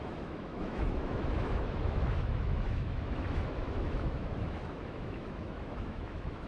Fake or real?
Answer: fake